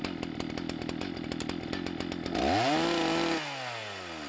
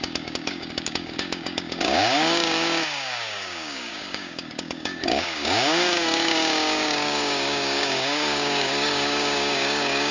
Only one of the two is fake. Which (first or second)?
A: second